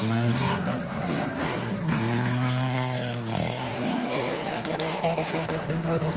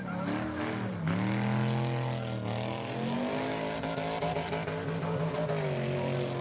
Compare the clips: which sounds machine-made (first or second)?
first